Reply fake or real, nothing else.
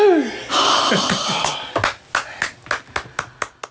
real